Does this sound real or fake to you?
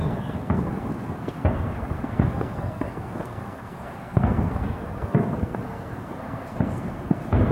fake